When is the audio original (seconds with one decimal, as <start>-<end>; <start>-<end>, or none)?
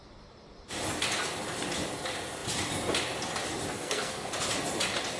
0.0-3.7; 4.3-5.2